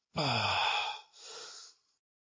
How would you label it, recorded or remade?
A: recorded